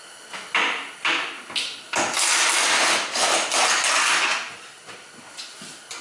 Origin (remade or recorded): recorded